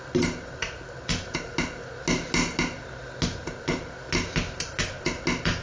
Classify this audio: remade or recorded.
recorded